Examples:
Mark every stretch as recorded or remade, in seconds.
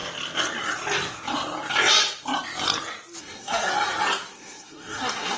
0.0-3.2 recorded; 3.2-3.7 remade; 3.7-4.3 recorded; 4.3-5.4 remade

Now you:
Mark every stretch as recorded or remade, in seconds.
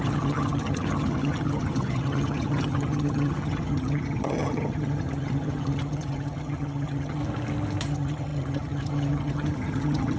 0.0-7.2 remade; 7.2-7.8 recorded; 7.8-10.2 remade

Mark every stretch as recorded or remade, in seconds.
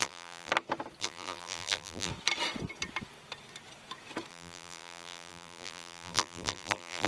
0.0-0.5 remade; 0.5-1.0 recorded; 1.0-2.1 remade; 2.1-4.3 recorded; 4.3-7.1 remade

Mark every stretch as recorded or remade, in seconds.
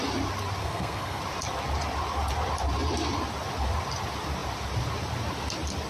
0.0-0.6 recorded; 0.6-1.2 remade; 1.2-5.9 recorded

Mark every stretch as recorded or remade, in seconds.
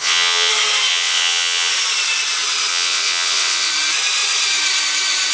0.0-0.5 remade; 0.5-0.9 recorded; 0.9-1.7 remade; 1.7-2.7 recorded; 2.7-3.7 remade; 3.7-5.3 recorded